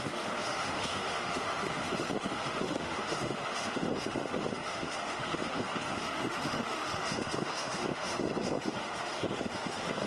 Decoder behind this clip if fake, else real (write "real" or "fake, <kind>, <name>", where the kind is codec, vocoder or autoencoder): fake, autoencoder, DAC-VAE